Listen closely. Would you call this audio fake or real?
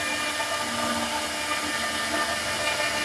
real